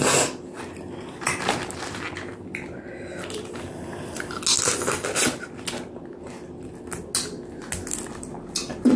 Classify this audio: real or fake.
real